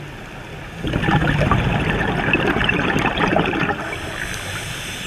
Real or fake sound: real